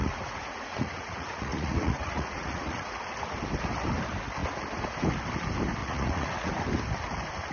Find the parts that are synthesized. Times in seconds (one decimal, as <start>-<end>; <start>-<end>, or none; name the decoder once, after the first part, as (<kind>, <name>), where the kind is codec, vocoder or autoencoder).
0.0-3.0 (vocoder, Vocos); 5.8-6.5